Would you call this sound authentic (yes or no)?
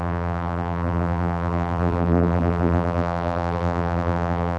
no